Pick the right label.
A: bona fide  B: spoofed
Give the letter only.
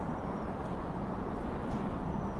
B